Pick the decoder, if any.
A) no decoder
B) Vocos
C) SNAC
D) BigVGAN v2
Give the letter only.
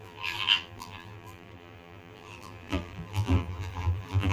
D